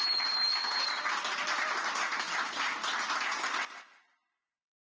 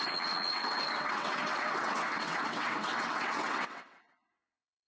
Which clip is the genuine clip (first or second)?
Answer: first